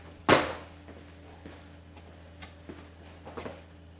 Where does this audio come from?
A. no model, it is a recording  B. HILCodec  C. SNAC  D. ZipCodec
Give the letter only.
A